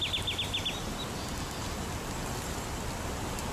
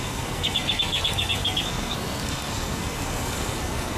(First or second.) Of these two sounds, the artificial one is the second